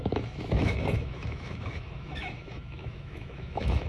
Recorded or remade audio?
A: remade